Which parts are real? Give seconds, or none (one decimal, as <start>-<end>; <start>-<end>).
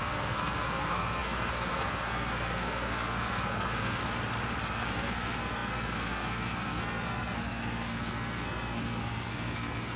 4.0-4.6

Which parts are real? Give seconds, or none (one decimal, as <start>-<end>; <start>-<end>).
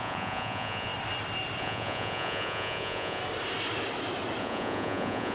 0.9-1.6; 3.2-4.4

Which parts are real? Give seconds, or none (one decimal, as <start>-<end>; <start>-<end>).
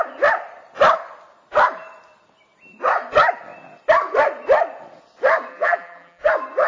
0.0-5.5; 6.3-6.7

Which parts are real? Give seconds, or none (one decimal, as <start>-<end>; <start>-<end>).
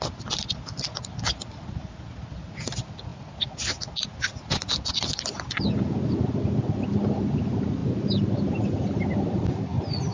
0.0-10.1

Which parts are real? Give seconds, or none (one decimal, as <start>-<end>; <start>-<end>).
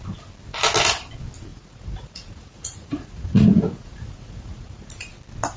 0.0-1.5; 4.9-5.6